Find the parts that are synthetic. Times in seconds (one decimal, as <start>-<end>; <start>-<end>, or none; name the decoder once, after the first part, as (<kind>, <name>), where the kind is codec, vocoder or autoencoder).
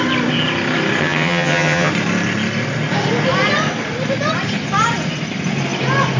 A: 1.0-1.9 (vocoder, HiFi-GAN)